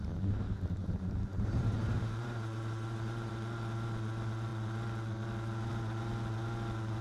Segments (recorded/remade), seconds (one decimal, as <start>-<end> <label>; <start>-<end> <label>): 0.0-0.8 recorded; 0.8-3.3 remade; 3.3-7.0 recorded